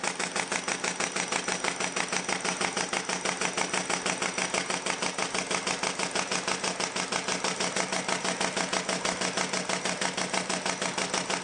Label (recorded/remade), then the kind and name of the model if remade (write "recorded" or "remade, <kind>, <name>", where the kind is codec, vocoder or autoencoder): recorded